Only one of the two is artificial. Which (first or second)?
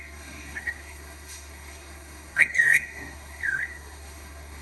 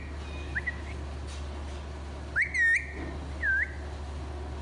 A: first